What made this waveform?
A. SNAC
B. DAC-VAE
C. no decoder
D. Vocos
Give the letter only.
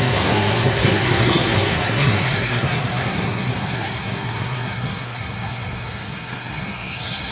A